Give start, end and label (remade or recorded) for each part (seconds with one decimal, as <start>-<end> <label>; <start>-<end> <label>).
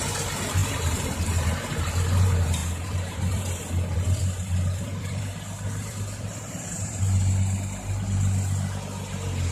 0.0-0.6 recorded; 0.6-1.3 remade; 1.3-2.6 recorded; 2.6-7.0 remade; 7.0-9.5 recorded